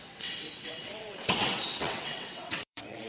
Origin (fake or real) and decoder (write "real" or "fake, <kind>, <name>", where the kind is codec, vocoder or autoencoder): fake, vocoder, WaveNeXt